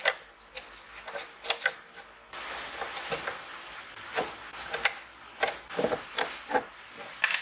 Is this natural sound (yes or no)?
yes